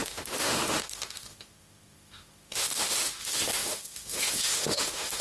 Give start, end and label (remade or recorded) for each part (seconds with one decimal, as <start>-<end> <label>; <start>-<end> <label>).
0.0-5.2 remade